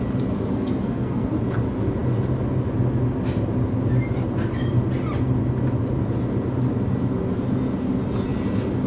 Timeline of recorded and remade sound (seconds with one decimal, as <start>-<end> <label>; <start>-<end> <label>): 0.0-0.5 recorded; 0.5-1.3 remade; 1.3-8.9 recorded